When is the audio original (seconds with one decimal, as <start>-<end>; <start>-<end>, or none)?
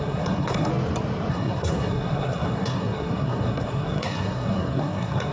0.7-1.3